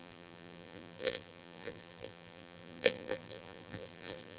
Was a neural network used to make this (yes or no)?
yes